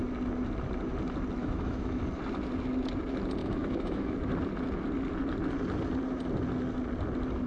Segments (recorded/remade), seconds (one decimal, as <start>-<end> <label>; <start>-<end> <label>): 0.0-1.4 recorded; 1.4-2.0 remade; 2.0-3.4 recorded; 3.4-4.1 remade; 4.1-7.5 recorded